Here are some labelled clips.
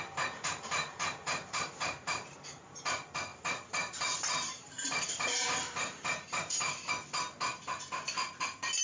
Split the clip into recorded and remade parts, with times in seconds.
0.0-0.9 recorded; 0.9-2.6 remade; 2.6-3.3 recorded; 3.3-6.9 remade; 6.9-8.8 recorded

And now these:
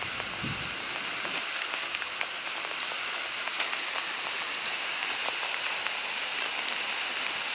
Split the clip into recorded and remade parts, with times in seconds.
0.0-3.2 recorded; 3.2-6.9 remade; 6.9-7.5 recorded